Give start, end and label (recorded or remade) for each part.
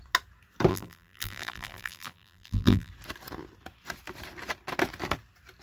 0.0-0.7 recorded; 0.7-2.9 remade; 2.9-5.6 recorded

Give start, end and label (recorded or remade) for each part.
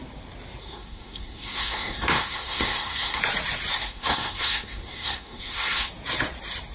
0.0-0.6 recorded; 0.6-3.2 remade; 3.2-3.7 recorded; 3.7-5.9 remade; 5.9-6.7 recorded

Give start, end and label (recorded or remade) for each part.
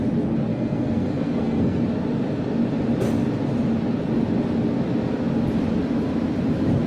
0.0-0.5 recorded; 0.5-1.8 remade; 1.8-6.9 recorded